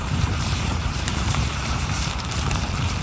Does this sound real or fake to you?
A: fake